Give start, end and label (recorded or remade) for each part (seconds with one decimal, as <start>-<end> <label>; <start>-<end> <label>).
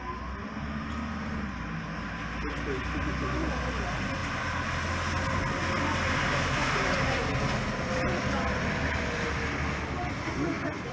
0.0-6.6 recorded; 6.6-7.2 remade; 7.2-10.9 recorded